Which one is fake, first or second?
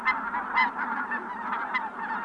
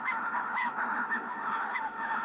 second